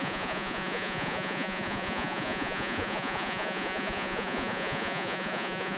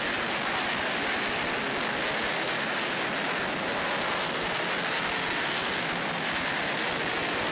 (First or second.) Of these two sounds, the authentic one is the second